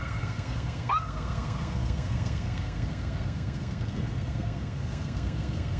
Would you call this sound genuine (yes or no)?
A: no